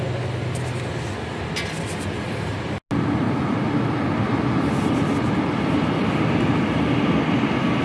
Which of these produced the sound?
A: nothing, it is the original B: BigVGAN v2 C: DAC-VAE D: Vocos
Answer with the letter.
A